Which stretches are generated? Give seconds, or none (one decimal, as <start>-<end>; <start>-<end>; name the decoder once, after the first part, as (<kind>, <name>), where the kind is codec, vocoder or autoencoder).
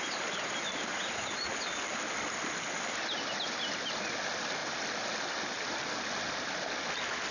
0.9-1.5 (vocoder, Vocos)